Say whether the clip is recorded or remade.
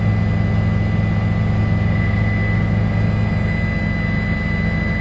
recorded